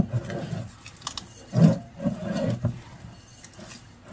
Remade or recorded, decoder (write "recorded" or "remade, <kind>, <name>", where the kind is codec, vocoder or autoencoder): recorded